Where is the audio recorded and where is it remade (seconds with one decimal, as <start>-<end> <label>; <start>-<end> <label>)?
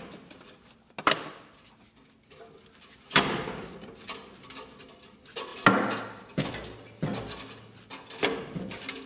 0.0-9.1 recorded